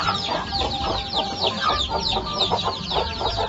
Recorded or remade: remade